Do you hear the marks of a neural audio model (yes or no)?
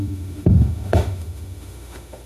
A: yes